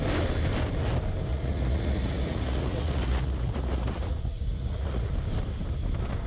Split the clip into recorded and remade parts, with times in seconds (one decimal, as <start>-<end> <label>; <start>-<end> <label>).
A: 0.0-1.3 recorded; 1.3-5.1 remade; 5.1-6.3 recorded